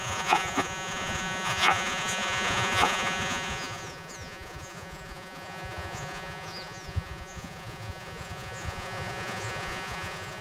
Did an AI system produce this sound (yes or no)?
yes